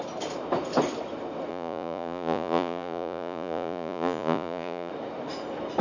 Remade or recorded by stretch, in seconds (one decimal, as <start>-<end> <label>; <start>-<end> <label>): 0.0-1.5 recorded; 1.5-4.9 remade; 4.9-5.8 recorded